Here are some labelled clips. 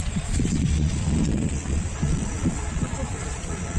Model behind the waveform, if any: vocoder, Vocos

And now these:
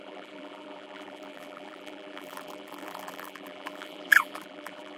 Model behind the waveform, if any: vocoder, BigVGAN v2